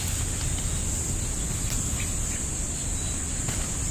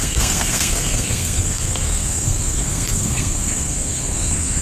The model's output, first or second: second